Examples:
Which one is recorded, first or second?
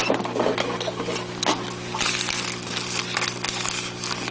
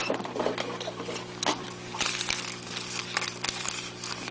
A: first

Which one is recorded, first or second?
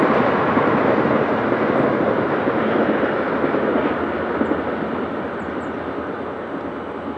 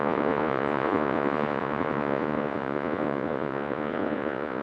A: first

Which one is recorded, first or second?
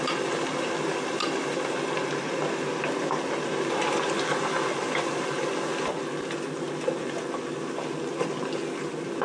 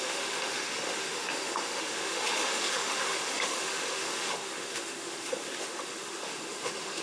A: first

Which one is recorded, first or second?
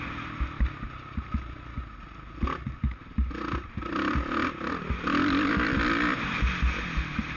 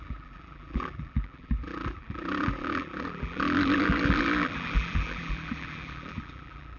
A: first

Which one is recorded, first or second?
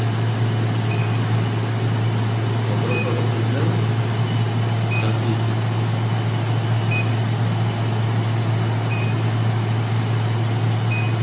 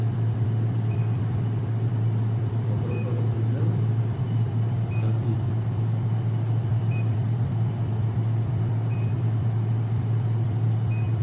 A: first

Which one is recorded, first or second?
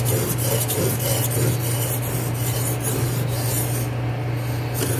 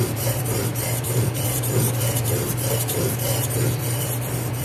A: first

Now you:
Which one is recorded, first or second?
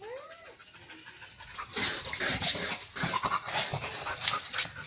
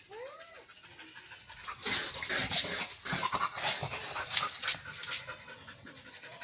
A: second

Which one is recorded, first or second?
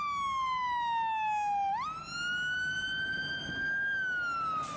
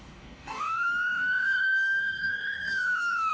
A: first